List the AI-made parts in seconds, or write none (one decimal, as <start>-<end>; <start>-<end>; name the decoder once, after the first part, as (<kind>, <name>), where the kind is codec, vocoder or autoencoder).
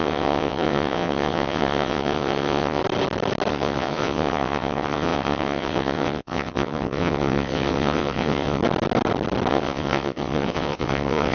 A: 0.0-2.8 (vocoder, WaveNeXt); 3.5-8.6; 9.5-11.3